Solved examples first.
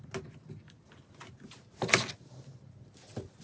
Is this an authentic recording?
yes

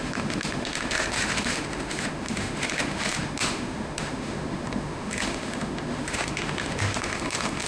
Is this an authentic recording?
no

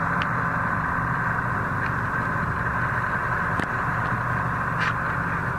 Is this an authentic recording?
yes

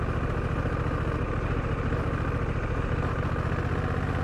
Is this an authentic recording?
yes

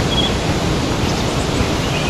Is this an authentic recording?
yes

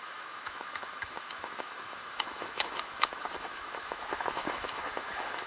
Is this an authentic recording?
no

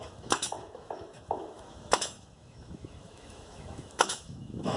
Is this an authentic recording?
no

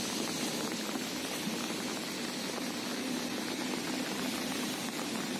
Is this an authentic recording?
yes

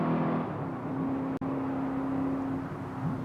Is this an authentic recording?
yes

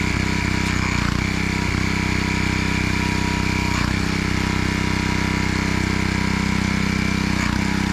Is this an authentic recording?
yes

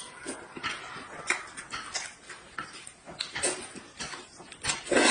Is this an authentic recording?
yes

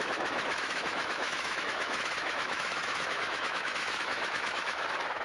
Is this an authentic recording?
no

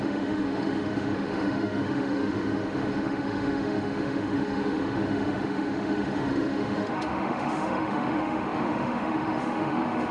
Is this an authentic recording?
no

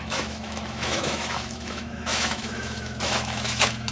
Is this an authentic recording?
no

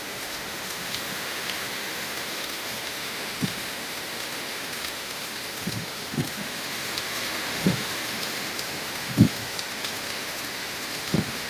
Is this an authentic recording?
no